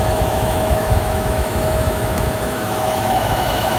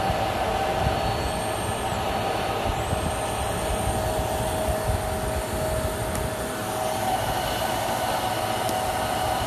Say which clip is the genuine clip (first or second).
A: second